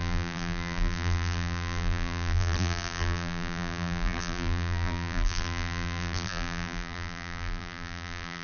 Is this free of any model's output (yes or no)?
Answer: no